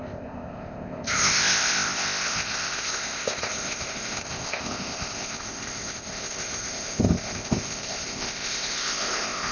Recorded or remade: remade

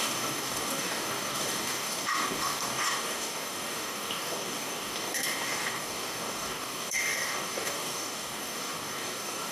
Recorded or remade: remade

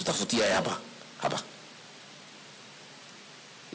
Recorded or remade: recorded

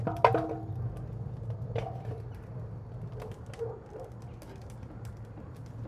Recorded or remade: recorded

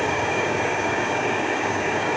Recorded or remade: remade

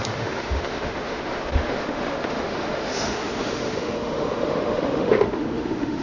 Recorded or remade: remade